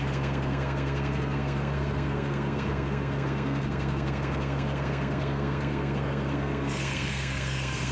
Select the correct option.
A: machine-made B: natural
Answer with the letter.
A